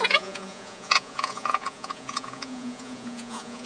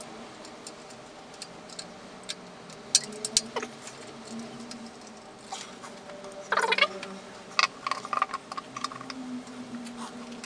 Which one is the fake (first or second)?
first